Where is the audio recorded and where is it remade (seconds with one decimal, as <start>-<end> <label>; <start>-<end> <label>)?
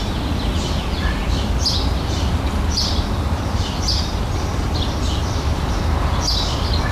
0.0-6.9 recorded